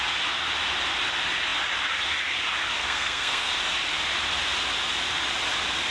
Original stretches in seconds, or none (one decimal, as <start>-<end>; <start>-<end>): 0.0-2.8; 3.5-5.9